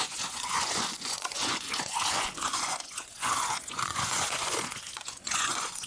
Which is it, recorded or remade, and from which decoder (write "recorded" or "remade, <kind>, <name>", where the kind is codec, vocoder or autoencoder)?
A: remade, vocoder, Vocos